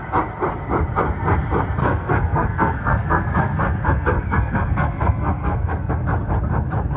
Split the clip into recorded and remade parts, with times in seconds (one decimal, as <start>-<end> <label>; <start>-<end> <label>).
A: 0.0-1.8 recorded; 1.8-5.9 remade; 5.9-7.0 recorded